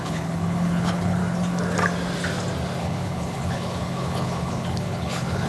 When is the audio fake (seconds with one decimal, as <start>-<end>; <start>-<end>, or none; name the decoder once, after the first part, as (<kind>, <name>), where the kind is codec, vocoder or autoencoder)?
0.0-1.2 (codec, HILCodec); 2.8-5.5